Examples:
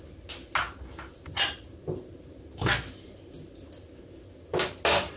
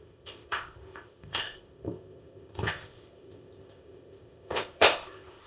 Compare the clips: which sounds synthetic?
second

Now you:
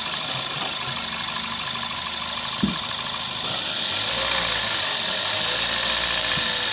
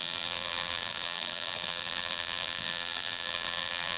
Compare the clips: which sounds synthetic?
second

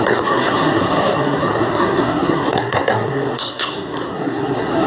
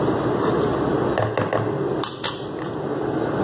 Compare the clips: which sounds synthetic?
first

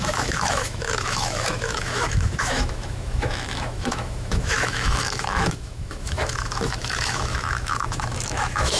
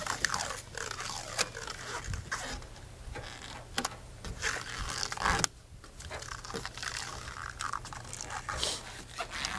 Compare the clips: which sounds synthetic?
first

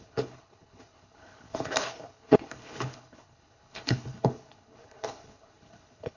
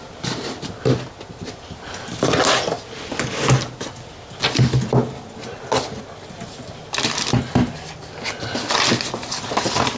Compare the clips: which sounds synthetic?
first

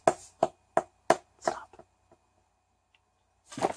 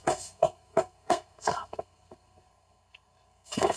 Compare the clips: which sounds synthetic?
second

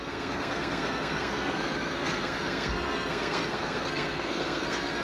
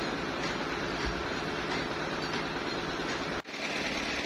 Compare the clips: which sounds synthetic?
first